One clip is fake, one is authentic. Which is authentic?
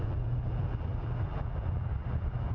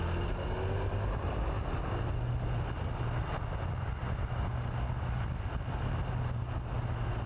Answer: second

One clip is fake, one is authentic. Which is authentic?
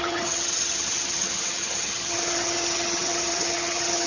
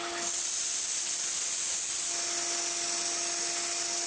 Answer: second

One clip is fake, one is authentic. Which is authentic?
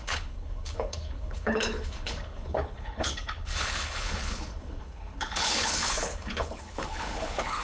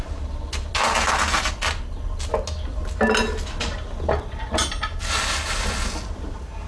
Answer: second